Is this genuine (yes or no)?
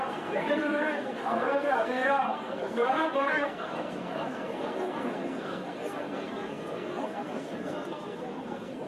no